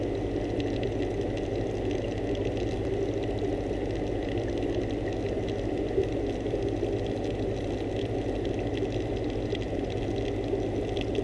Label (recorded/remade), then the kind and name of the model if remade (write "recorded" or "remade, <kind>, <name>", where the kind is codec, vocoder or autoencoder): recorded